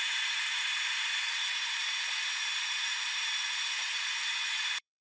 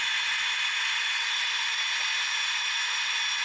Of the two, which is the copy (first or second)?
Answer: first